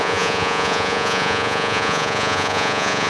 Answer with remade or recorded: remade